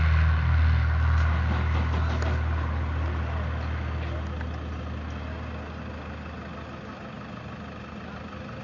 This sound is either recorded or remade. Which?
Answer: recorded